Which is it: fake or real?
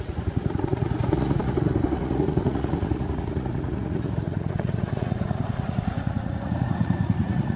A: fake